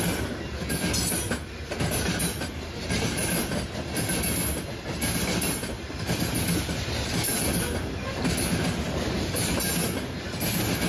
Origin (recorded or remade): recorded